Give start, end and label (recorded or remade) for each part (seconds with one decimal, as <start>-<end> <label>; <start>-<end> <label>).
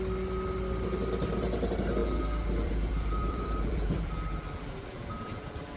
0.0-2.0 recorded; 2.0-5.8 remade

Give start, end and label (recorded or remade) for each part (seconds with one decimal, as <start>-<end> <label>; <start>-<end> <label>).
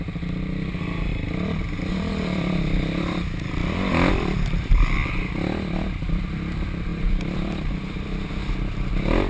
0.0-1.1 remade; 1.1-1.9 recorded; 1.9-3.6 remade; 3.6-4.1 recorded; 4.1-9.3 remade